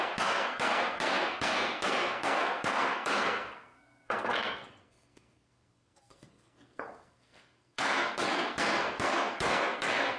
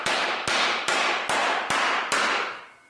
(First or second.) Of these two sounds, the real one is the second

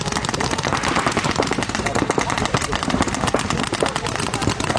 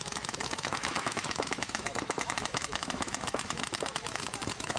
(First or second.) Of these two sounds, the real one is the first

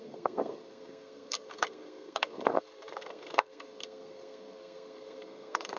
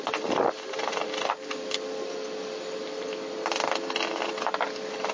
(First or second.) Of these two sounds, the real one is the second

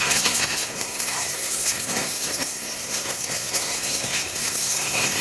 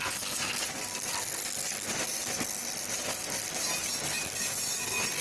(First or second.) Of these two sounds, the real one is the second